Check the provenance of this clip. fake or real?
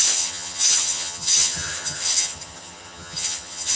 fake